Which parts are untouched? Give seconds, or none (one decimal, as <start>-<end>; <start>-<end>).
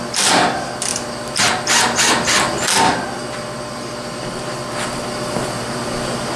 0.0-6.4